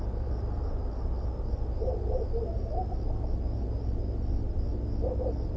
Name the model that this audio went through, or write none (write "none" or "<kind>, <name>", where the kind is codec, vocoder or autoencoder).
none